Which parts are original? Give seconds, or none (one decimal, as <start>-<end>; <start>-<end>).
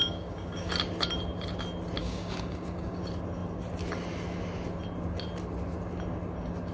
0.7-2.0; 3.0-6.7